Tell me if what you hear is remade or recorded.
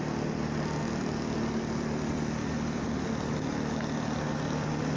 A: recorded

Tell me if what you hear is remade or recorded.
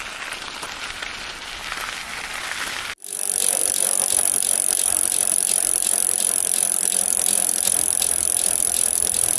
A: recorded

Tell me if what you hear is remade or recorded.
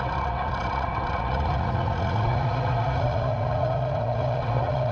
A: remade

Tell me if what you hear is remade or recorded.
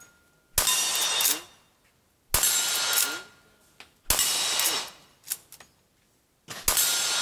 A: recorded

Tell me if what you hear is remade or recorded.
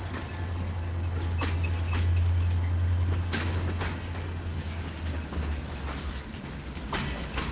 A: recorded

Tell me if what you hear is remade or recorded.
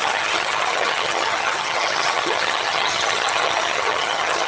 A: remade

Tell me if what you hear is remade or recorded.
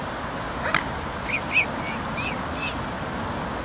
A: recorded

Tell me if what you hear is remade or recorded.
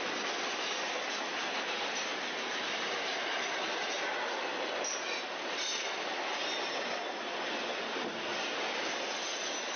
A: recorded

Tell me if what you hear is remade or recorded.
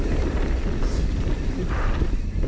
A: recorded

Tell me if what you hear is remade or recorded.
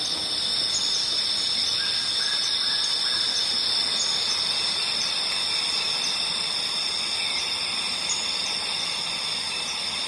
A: recorded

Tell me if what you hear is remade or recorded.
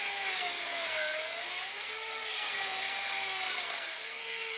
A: remade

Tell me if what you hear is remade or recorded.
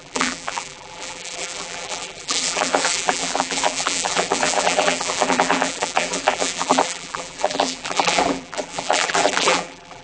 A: remade